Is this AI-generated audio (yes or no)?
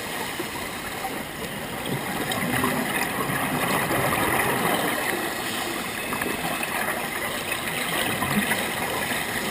no